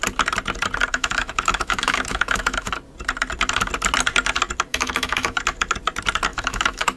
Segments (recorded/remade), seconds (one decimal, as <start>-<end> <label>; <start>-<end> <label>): 0.0-0.9 recorded; 0.9-2.7 remade; 2.7-4.7 recorded; 4.7-5.4 remade; 5.4-6.3 recorded; 6.3-7.0 remade